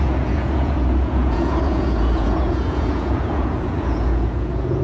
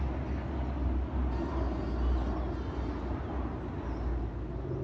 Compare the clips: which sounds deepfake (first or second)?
first